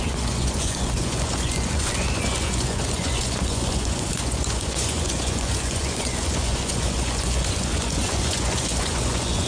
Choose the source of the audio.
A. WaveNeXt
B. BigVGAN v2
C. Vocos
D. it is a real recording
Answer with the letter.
C